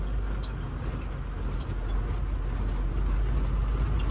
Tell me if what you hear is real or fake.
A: real